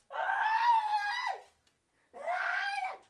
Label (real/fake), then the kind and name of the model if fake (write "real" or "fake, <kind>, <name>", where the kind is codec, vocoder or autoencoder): real